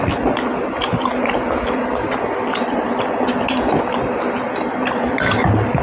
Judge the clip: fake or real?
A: real